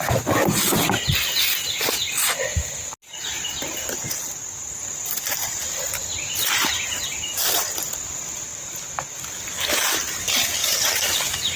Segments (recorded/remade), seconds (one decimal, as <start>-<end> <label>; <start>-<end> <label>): 0.0-10.6 recorded; 10.6-11.6 remade

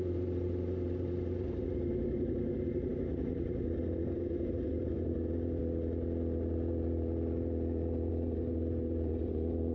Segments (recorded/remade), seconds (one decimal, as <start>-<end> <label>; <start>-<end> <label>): 0.0-5.6 remade; 5.6-8.1 recorded; 8.1-9.7 remade

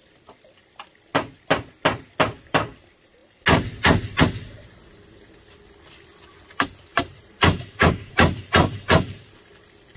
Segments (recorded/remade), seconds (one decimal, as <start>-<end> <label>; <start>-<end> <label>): 0.0-6.9 recorded; 6.9-9.5 remade; 9.5-10.0 recorded